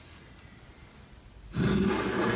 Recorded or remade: recorded